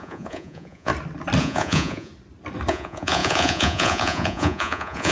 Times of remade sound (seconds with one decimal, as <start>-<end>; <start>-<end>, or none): 0.0-0.9; 1.4-2.1; 2.7-5.1